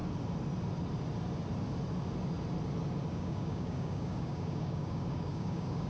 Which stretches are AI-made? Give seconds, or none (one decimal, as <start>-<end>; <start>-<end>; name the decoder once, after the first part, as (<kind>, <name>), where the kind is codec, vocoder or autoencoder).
3.1-5.9 (codec, DAC)